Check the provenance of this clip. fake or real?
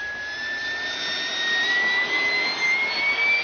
real